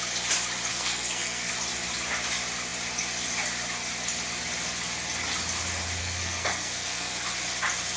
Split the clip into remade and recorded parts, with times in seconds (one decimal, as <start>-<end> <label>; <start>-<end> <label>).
0.0-0.7 recorded; 0.7-1.5 remade; 1.5-6.0 recorded; 6.0-7.1 remade; 7.1-8.0 recorded